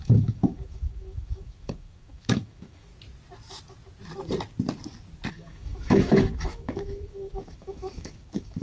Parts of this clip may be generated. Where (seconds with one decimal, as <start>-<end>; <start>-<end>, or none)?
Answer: 0.0-2.9; 5.3-8.6